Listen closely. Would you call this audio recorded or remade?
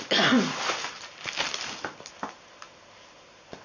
recorded